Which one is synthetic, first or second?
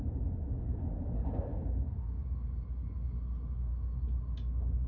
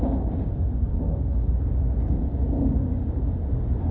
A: second